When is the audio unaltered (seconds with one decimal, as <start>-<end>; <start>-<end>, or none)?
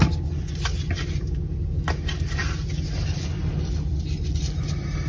0.0-5.1